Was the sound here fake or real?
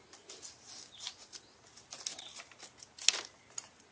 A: real